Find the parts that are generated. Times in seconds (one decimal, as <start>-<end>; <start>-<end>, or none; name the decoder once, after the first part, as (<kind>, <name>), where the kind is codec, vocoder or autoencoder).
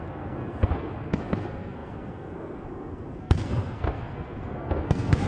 0.0-5.3 (codec, SNAC)